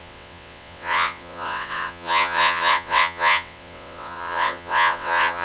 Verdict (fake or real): fake